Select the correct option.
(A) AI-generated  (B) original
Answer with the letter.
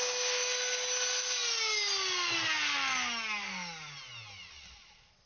B